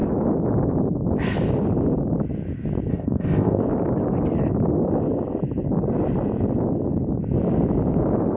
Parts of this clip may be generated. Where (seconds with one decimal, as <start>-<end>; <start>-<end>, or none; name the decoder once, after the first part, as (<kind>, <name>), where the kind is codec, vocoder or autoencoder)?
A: 2.9-3.6 (codec, ZipCodec)